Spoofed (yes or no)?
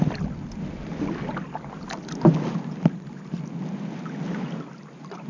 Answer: no